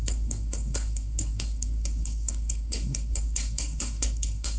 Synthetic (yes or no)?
yes